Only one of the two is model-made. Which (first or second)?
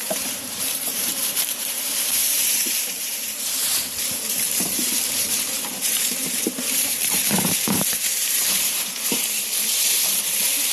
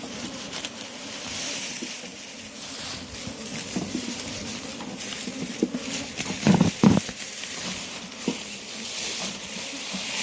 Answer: first